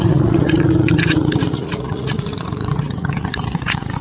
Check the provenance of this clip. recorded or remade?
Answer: remade